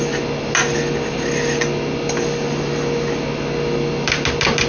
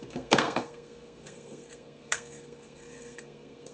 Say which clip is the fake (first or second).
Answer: second